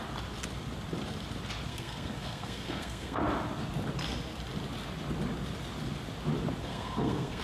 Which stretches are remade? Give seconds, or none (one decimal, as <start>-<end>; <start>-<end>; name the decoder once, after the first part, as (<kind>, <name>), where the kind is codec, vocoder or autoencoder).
1.7-3.2 (codec, SNAC); 6.6-7.4